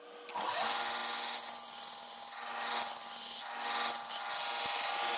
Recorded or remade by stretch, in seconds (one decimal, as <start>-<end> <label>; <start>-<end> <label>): 0.0-5.2 recorded